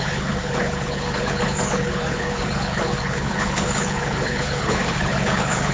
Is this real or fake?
fake